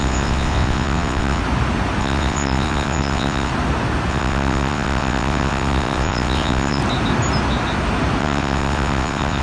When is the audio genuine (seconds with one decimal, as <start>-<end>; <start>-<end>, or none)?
1.4-2.0; 3.5-4.1; 6.8-8.2